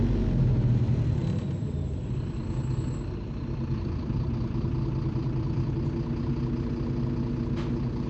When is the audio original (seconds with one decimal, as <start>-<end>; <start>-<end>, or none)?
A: 0.0-1.2; 5.7-8.1